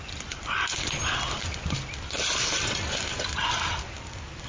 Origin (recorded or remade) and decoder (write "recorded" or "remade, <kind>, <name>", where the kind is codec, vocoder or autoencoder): recorded